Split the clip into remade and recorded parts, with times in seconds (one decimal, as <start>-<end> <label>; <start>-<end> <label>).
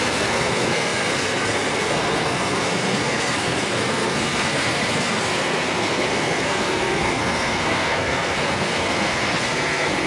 0.0-10.1 remade